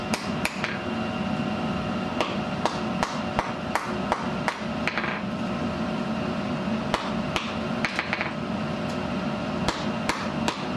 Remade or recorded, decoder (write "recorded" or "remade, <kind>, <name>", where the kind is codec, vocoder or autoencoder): recorded